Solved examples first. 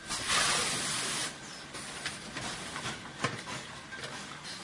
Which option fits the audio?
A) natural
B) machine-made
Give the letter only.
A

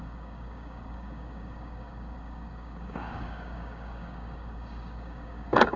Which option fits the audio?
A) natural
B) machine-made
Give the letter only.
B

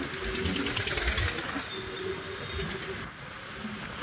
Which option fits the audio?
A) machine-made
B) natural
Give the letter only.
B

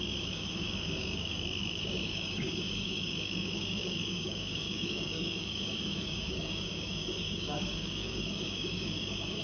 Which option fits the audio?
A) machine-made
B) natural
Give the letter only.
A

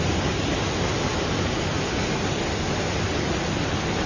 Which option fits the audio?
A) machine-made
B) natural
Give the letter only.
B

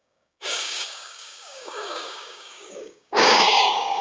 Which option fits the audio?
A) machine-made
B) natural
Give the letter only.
A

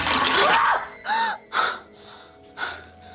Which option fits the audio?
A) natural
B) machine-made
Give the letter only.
A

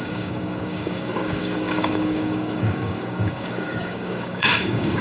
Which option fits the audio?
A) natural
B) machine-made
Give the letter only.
B